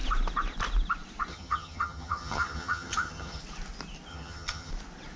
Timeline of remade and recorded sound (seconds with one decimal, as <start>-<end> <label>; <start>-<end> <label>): 0.0-1.3 recorded; 1.3-3.4 remade; 3.4-4.1 recorded; 4.1-4.7 remade; 4.7-5.2 recorded